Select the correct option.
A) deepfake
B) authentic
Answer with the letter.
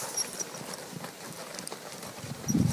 A